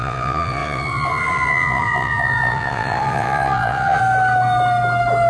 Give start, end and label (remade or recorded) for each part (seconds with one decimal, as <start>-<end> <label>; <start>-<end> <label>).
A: 0.0-4.0 remade; 4.0-5.3 recorded